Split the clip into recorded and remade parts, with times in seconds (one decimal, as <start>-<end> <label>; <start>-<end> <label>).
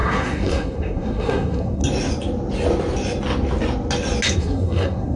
0.0-1.8 remade; 1.8-4.3 recorded; 4.3-5.2 remade